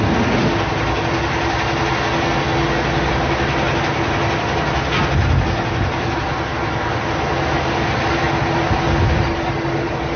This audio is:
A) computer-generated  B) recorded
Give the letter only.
B